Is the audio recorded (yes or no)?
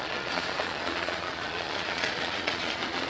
no